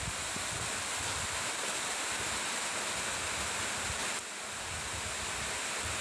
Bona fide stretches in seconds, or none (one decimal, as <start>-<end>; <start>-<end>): 4.0-6.0